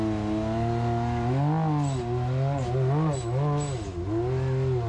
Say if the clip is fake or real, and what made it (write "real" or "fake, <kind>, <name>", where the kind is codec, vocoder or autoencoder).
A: real